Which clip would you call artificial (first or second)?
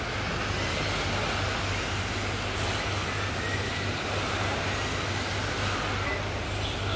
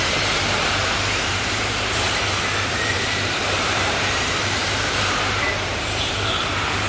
second